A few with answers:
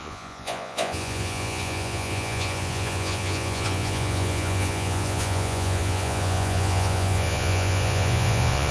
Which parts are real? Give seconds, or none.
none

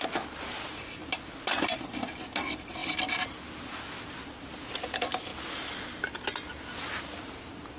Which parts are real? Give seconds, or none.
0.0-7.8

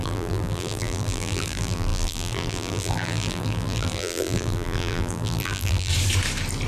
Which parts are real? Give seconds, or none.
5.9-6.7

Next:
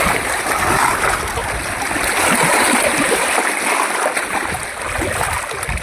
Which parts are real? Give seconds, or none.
0.0-5.8

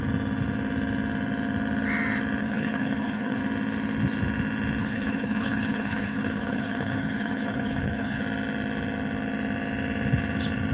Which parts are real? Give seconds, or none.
0.0-2.4; 3.4-4.8; 8.2-10.7